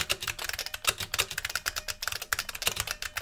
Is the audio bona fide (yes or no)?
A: yes